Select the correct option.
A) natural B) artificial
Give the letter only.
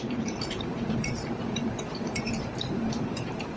B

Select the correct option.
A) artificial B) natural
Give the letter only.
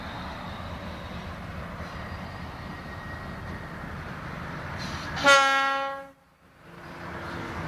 B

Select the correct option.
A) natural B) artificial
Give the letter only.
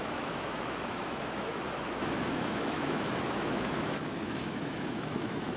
B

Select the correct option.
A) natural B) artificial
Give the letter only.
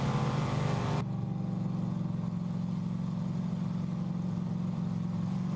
A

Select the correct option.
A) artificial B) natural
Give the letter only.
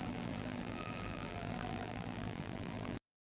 A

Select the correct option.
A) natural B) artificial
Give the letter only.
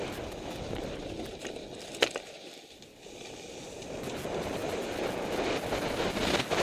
A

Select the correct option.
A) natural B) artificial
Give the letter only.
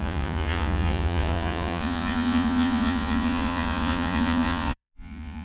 B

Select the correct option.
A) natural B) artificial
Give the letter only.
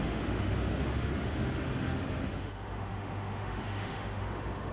B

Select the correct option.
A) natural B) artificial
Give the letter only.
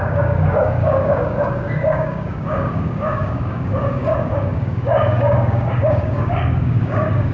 B